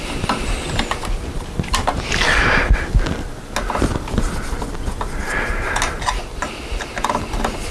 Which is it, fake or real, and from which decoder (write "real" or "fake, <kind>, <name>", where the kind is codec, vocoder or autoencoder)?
real